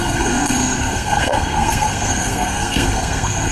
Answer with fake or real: fake